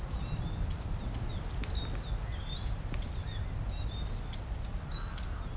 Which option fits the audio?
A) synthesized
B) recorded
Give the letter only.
B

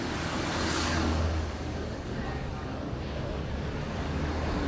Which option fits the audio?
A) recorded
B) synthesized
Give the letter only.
B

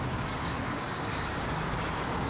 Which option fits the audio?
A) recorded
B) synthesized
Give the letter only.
B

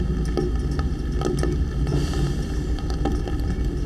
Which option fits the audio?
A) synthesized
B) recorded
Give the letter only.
B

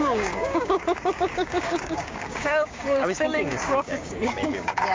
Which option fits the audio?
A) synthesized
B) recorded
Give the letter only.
A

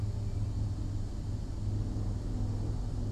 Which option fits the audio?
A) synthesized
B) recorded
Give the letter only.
B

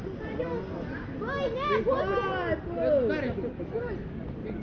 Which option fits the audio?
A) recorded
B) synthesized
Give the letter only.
A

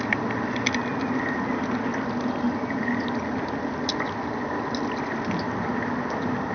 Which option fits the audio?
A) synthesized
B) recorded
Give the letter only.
B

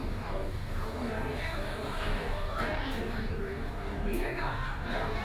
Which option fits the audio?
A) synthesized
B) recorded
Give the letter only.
A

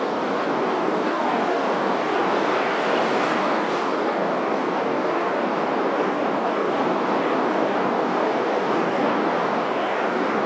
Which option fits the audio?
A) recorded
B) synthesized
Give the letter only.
B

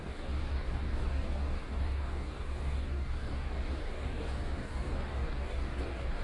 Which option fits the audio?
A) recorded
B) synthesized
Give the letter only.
B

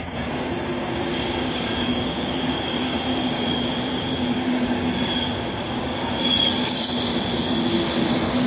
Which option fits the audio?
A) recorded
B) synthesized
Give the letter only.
B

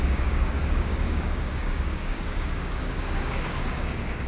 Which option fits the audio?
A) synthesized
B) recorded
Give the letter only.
A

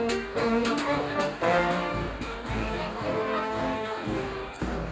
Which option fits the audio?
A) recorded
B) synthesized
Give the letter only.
B